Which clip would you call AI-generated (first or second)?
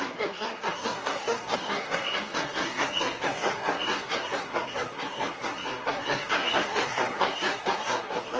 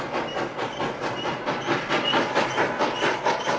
first